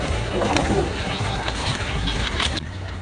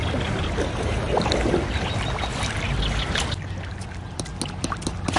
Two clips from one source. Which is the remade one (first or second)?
first